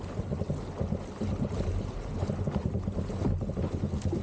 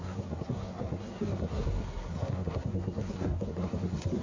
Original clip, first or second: first